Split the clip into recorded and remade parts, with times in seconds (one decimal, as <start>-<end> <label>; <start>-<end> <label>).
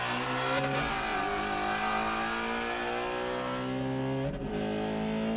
0.0-5.4 recorded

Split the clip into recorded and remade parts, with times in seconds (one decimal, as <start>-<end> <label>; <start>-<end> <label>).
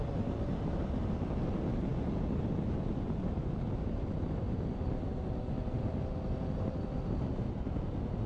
0.0-8.3 recorded